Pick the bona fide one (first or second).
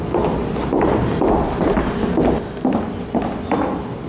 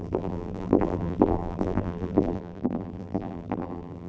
first